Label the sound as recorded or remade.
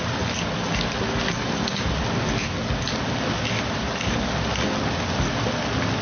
recorded